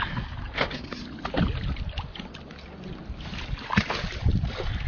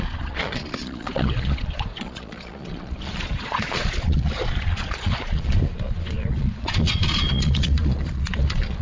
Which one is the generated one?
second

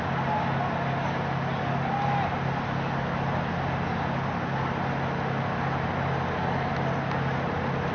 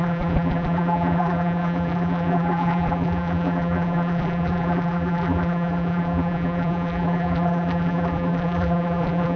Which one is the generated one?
second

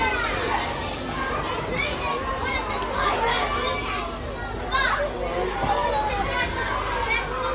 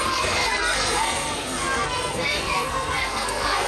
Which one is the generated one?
second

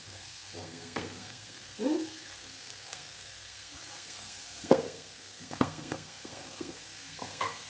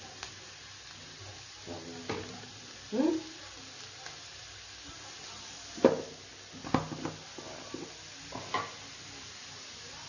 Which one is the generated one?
first